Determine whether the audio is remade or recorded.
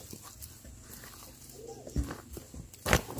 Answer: recorded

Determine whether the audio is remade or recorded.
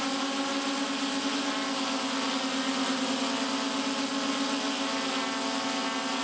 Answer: recorded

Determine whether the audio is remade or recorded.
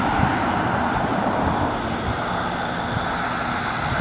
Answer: recorded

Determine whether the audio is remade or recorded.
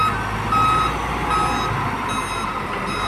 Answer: recorded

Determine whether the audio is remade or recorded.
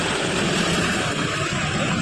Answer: recorded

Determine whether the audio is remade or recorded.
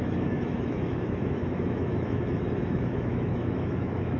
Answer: remade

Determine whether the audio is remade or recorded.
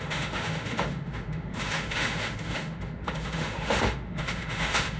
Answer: remade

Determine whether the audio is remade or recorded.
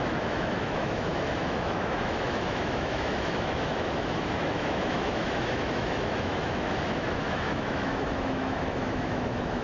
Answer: remade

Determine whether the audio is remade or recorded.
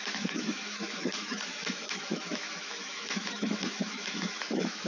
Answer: remade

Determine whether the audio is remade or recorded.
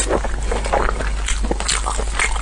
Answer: recorded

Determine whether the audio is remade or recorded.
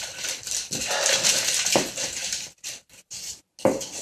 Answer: recorded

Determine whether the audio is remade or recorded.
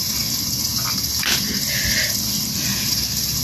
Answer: recorded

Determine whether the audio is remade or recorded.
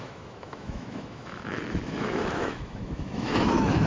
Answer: remade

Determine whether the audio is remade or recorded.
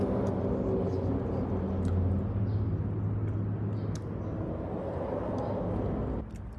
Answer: recorded